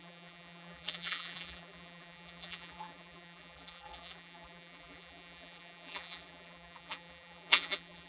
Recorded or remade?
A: remade